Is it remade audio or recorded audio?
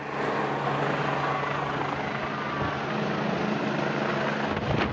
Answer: recorded